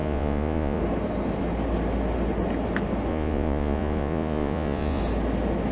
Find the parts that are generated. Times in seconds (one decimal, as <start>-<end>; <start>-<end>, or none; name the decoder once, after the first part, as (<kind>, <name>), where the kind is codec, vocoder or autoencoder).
0.0-0.8 (vocoder, Vocos); 3.1-5.0